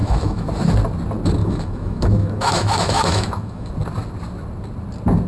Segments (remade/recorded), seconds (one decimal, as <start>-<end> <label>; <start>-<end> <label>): 0.0-0.5 remade; 0.5-1.4 recorded; 1.4-3.7 remade; 3.7-5.3 recorded